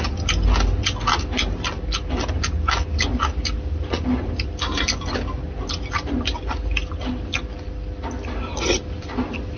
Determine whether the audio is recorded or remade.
recorded